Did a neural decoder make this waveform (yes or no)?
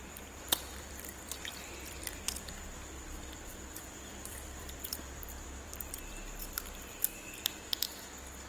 yes